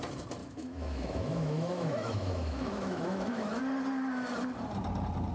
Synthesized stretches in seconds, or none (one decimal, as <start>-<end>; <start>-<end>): 0.4-3.6